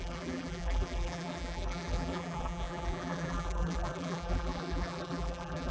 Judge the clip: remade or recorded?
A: remade